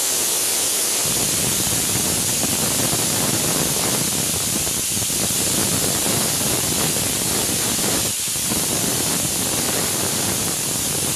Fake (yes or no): yes